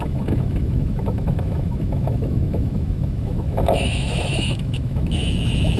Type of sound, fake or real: fake